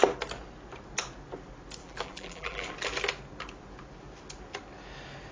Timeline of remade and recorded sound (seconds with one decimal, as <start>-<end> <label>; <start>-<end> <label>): 0.0-1.8 recorded; 1.8-2.7 remade; 2.7-5.3 recorded